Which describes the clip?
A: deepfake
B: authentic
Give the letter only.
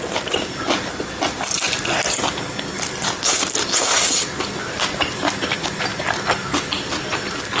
B